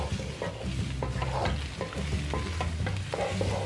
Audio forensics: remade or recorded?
recorded